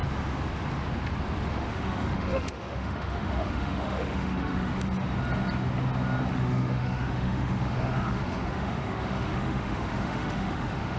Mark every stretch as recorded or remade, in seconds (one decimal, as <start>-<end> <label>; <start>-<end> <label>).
0.0-1.5 recorded; 1.5-4.7 remade; 4.7-6.3 recorded; 6.3-11.0 remade